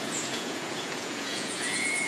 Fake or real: fake